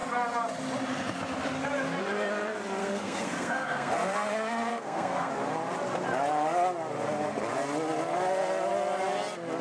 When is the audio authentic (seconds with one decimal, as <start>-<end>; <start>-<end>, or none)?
0.0-2.8; 3.9-4.7; 5.3-9.6